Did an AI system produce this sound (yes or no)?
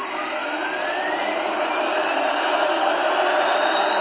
no